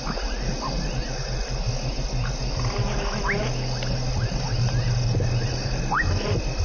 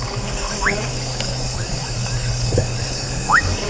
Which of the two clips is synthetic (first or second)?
second